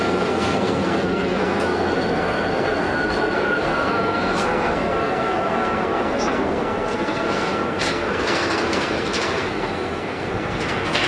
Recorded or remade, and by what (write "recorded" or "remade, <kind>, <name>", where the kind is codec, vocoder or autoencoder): remade, codec, SNAC